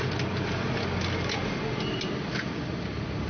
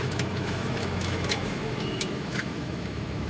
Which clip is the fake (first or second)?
second